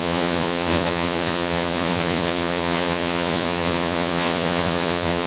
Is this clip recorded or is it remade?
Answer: remade